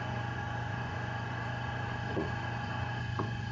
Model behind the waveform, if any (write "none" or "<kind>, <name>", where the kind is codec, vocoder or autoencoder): vocoder, Vocos